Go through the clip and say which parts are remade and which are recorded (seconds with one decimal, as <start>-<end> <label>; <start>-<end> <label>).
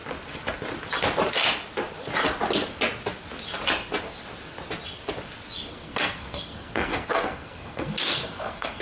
0.0-5.7 recorded; 5.7-8.8 remade